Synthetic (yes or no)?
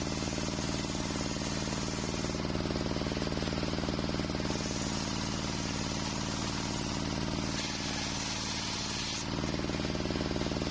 no